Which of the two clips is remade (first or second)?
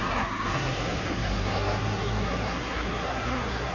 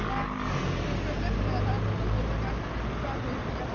first